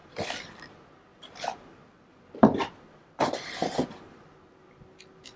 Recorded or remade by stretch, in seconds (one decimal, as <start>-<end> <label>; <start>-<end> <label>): 0.0-0.7 remade; 0.7-1.1 recorded; 1.1-4.0 remade; 4.0-5.4 recorded